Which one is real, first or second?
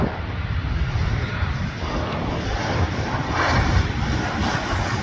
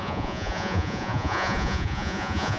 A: first